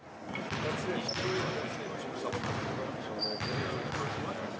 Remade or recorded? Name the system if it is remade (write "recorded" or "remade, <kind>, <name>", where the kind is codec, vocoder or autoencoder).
recorded